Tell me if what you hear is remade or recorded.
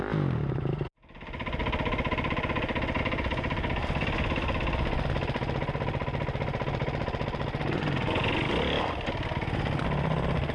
recorded